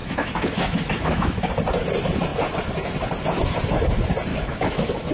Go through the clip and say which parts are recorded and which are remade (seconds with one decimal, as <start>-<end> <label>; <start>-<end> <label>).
0.0-1.5 remade; 1.5-4.3 recorded; 4.3-5.1 remade